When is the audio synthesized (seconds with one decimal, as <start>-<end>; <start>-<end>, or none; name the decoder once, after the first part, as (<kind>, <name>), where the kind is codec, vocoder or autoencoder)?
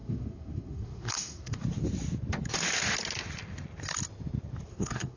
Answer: 0.0-1.6 (codec, SNAC); 4.7-5.2